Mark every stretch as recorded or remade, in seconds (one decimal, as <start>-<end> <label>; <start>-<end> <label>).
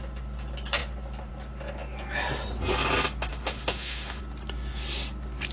0.0-3.3 recorded; 3.3-4.2 remade; 4.2-5.5 recorded